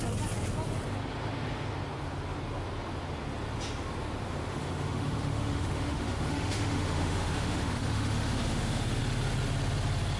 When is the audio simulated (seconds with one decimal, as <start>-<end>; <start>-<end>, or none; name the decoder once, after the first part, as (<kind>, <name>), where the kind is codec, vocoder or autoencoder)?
4.5-9.0 (autoencoder, DAC-VAE)